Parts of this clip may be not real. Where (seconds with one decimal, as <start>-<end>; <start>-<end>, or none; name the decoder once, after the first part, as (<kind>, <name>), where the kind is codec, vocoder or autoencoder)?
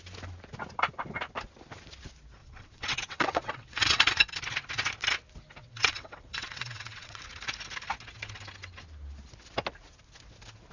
2.4-4.2 (vocoder, WaveNeXt); 5.6-7.2